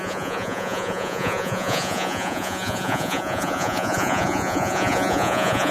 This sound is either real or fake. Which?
fake